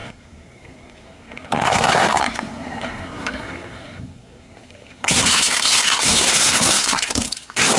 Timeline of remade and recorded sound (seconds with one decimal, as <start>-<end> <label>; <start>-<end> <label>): 0.0-7.8 remade